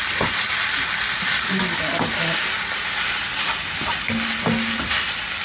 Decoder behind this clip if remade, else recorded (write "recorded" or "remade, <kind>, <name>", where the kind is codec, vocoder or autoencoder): recorded